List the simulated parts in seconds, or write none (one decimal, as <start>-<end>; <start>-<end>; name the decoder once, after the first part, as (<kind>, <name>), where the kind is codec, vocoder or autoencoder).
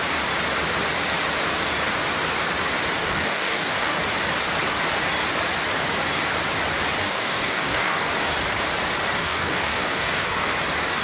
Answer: 3.0-4.0 (codec, DAC); 7.0-8.1; 9.2-10.5